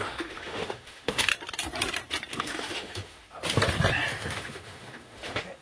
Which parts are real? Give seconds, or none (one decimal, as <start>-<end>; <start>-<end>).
1.3-2.3; 3.4-4.1